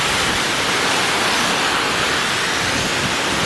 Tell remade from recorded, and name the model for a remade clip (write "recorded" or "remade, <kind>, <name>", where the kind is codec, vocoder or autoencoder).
recorded